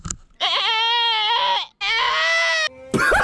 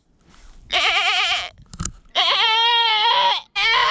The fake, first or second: second